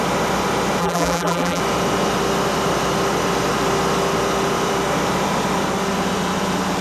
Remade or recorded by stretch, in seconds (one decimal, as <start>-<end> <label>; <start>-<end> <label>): 0.0-0.8 recorded; 0.8-1.6 remade; 1.6-6.8 recorded